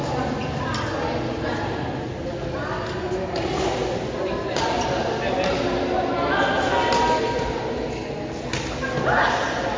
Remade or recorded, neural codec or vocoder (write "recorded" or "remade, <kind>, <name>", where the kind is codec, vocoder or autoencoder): recorded